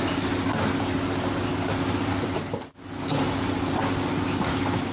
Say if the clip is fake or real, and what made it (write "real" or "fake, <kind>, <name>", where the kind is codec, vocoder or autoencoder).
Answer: real